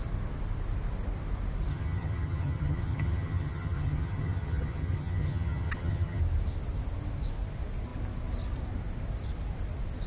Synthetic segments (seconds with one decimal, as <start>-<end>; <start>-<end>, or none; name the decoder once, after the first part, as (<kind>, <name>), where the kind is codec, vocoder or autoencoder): 1.7-6.2 (vocoder, HiFi-GAN)